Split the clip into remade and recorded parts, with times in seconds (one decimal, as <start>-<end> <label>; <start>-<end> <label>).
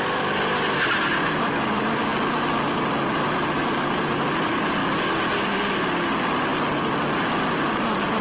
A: 0.0-2.1 remade; 2.1-3.3 recorded; 3.3-4.8 remade; 4.8-5.4 recorded; 5.4-6.5 remade; 6.5-7.5 recorded; 7.5-8.2 remade